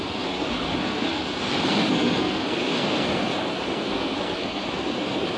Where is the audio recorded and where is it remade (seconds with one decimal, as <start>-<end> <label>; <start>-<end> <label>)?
0.0-5.4 remade